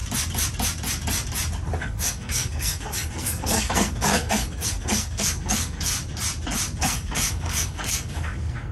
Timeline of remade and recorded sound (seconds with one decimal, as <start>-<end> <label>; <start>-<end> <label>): 0.0-1.8 recorded; 1.8-5.9 remade; 5.9-6.8 recorded; 6.8-8.7 remade